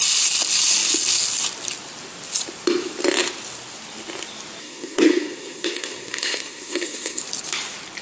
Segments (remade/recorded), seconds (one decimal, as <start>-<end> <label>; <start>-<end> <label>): 0.0-4.6 recorded; 4.6-7.2 remade; 7.2-8.0 recorded